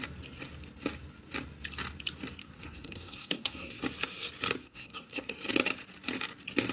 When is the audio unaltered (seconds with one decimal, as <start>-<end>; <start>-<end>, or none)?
0.0-2.4; 3.8-4.6; 5.3-6.7